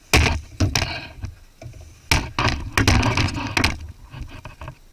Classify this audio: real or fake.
real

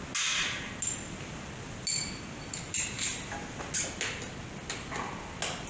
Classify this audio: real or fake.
real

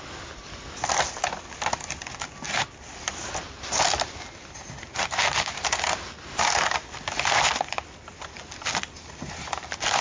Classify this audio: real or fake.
real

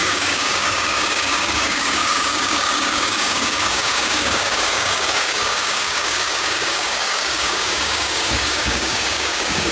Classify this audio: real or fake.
fake